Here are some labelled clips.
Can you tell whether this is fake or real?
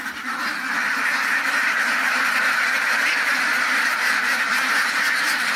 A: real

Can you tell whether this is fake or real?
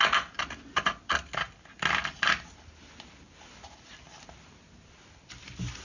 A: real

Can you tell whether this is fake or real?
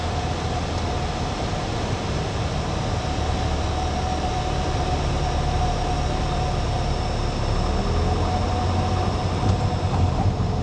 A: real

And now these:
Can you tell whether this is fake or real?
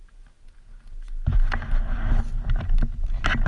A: real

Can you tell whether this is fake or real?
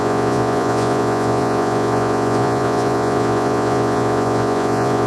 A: fake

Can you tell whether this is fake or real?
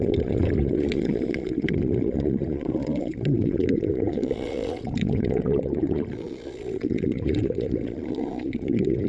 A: fake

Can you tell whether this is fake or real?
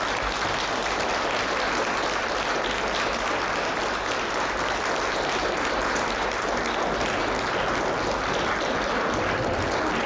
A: real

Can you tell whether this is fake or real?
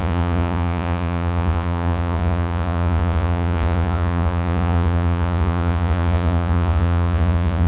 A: fake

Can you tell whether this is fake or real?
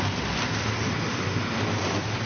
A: real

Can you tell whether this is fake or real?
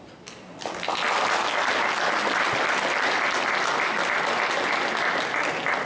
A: real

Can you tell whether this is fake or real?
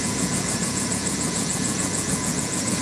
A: fake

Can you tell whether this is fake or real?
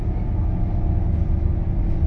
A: real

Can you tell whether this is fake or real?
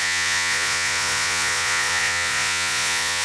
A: fake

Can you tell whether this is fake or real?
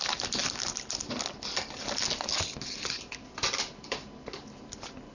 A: real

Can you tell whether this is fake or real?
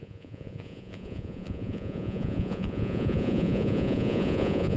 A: fake